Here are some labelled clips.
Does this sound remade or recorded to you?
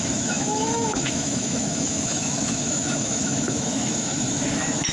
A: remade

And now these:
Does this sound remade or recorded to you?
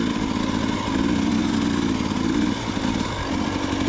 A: recorded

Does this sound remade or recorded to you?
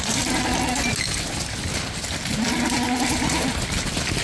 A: recorded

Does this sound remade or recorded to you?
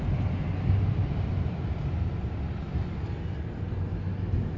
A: recorded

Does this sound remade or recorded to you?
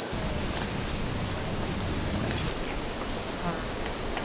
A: recorded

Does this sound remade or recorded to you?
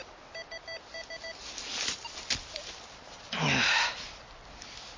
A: recorded